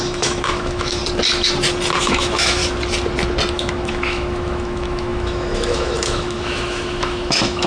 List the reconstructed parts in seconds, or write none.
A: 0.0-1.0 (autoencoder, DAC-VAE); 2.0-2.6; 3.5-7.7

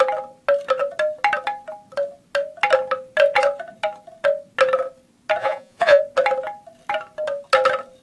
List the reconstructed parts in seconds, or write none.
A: 5.4-6.0 (vocoder, Vocos)

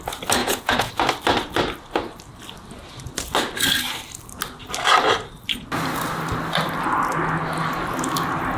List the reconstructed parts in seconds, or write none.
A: 0.4-0.9 (vocoder, Vocos)

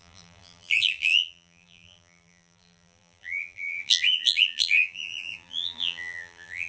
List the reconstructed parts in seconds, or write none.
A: 0.0-6.7 (vocoder, BigVGAN v2)

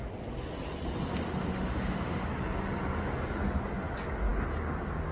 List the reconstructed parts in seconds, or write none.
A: 1.2-2.3 (autoencoder, DAC-VAE)

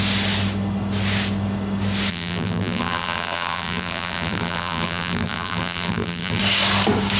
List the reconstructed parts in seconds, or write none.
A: 2.1-6.4 (vocoder, BigVGAN v2)

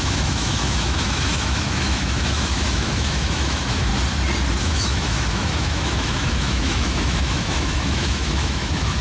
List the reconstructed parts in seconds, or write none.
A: 0.0-3.9 (autoencoder, DAC-VAE); 4.6-9.0

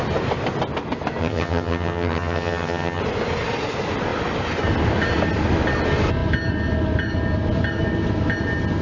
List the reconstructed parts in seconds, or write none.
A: 1.2-3.0 (vocoder, HiFi-GAN)